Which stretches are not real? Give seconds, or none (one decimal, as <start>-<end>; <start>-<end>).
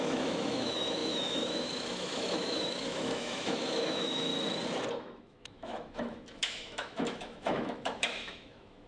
0.0-4.3; 5.0-8.9